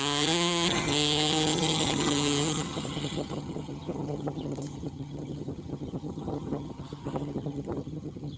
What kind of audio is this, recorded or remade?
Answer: remade